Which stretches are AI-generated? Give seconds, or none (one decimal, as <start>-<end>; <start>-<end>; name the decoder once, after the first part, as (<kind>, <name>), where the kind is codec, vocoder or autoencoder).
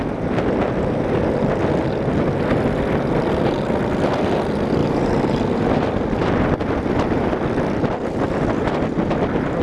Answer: 4.8-5.5 (vocoder, BigVGAN v2)